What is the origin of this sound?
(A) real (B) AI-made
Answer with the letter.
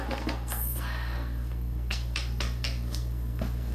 B